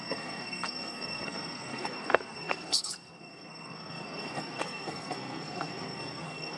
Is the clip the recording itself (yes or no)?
no